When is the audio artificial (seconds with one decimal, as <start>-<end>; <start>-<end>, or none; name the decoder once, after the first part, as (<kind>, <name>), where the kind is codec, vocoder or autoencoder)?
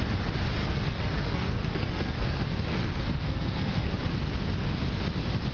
0.6-3.9 (codec, SNAC)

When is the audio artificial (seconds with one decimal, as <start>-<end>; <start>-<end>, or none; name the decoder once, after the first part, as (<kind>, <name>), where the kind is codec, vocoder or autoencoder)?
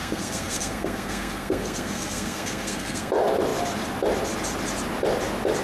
0.0-3.1 (codec, SNAC)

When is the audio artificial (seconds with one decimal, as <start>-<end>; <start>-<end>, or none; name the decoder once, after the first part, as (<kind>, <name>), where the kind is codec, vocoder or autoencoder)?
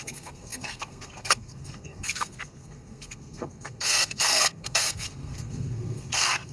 0.0-6.5 (codec, SNAC)